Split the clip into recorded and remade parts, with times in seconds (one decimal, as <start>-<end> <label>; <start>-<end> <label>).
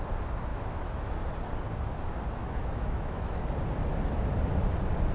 0.0-0.5 recorded; 0.5-1.1 remade; 1.1-2.4 recorded; 2.4-3.3 remade; 3.3-5.1 recorded